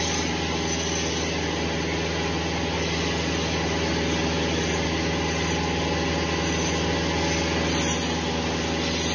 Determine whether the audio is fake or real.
real